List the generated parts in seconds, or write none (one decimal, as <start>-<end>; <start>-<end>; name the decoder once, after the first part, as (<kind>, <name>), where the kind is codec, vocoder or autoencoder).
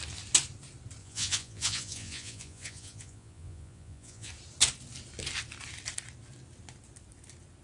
1.0-4.3 (vocoder, Vocos)